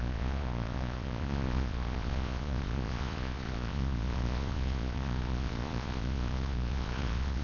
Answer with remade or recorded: remade